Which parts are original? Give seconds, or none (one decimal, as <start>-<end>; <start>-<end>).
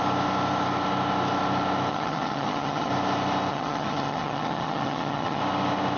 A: 0.0-1.9; 2.9-3.5; 5.4-6.0